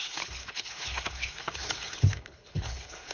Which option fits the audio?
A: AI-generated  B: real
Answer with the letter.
A